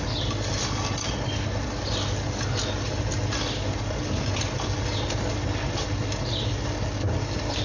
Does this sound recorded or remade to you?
recorded